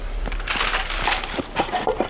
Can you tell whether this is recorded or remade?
recorded